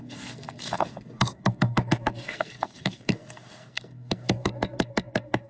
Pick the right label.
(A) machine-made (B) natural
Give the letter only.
A